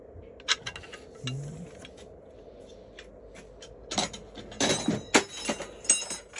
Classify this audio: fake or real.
real